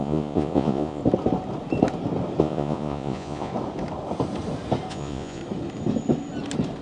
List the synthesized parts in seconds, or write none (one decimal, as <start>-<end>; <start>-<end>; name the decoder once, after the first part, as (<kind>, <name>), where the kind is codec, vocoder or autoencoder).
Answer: 0.0-1.0 (vocoder, Vocos); 2.4-3.5; 4.9-5.4